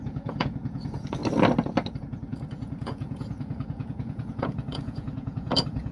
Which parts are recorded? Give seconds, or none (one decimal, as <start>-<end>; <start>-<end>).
1.2-2.0